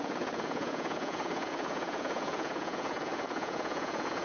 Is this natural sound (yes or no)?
no